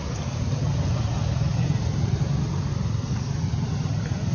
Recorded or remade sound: recorded